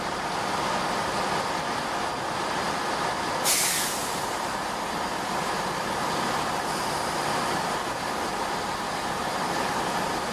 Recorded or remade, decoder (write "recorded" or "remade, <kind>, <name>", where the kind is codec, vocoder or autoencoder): recorded